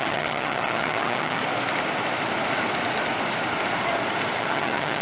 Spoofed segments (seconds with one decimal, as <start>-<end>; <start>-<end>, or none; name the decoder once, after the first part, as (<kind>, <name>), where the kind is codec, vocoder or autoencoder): 0.0-1.4 (vocoder, HiFi-GAN); 4.4-5.0